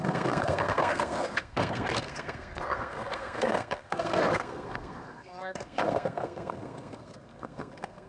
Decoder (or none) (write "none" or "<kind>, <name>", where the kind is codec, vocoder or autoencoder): codec, SNAC